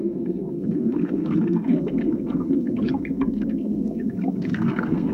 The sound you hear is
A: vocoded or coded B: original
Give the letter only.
A